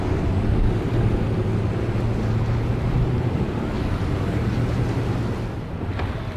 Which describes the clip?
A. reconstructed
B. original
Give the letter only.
B